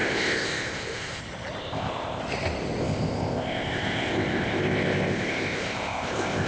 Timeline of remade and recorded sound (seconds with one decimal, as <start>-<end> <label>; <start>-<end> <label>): 0.0-1.2 remade; 1.2-1.6 recorded; 1.6-2.2 remade; 2.2-2.8 recorded; 2.8-6.5 remade